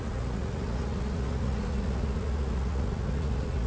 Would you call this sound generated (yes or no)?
yes